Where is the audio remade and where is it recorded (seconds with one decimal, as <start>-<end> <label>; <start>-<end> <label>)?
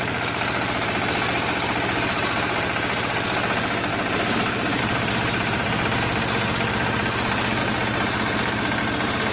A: 0.0-3.9 recorded; 3.9-6.0 remade; 6.0-9.3 recorded